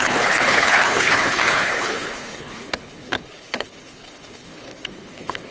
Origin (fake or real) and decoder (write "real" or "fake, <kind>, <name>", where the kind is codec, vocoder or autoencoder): fake, codec, HILCodec